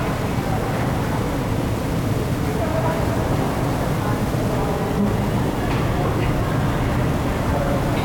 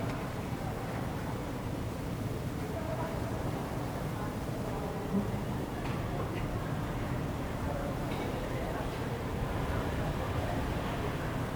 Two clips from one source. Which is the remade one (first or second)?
second